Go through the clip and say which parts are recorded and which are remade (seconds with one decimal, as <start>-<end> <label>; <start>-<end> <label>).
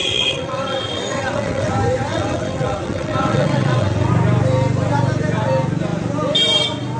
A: 0.0-1.7 remade; 1.7-2.1 recorded; 2.1-4.1 remade; 4.1-7.0 recorded